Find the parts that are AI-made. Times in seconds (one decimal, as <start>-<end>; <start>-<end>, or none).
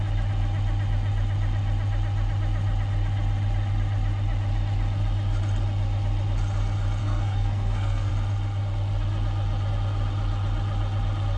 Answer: 7.0-8.1